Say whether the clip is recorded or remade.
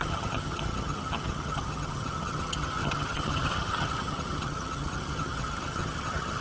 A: remade